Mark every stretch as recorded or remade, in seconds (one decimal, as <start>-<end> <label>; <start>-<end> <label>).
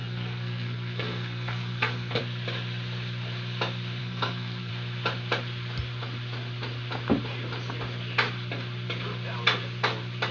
0.0-2.2 remade; 2.2-4.0 recorded; 4.0-4.7 remade; 4.7-10.3 recorded